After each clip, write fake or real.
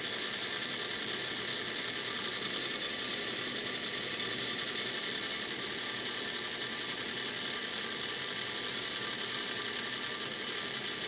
real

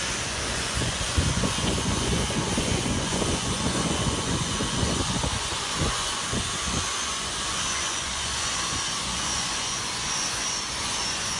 fake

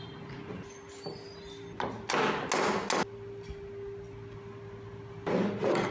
real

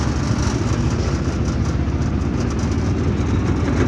real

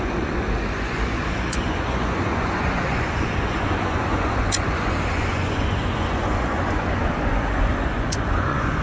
fake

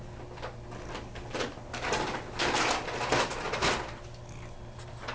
real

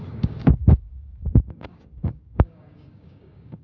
fake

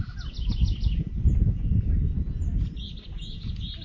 real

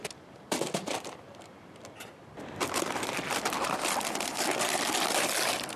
fake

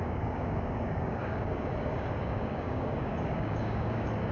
fake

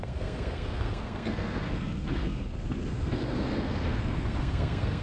fake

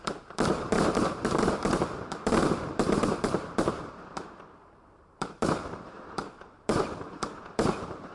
fake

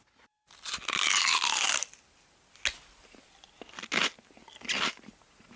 real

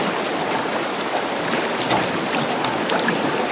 real